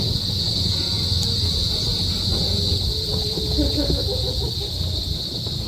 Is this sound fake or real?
real